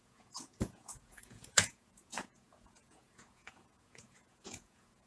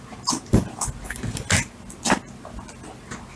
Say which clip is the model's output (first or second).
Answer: first